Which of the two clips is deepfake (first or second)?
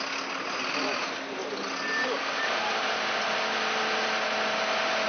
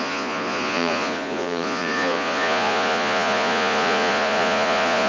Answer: second